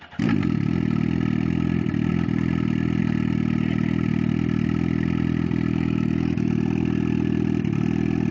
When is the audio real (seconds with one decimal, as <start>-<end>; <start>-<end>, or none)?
0.0-5.7; 6.5-8.3